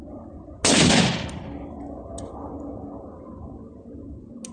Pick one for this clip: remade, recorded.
recorded